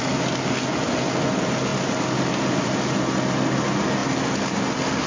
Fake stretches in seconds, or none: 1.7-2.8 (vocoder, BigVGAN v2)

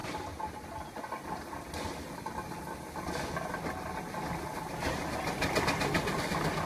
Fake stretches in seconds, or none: none

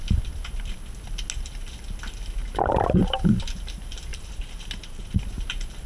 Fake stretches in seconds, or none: 2.4-3.5 (vocoder, BigVGAN v2); 4.1-5.2

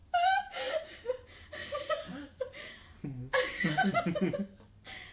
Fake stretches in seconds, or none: 0.0-0.6 (vocoder, BigVGAN v2); 1.6-3.9